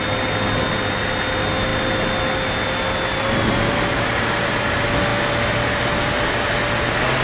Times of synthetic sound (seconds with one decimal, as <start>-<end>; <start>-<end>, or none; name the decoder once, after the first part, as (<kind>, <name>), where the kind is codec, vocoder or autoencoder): none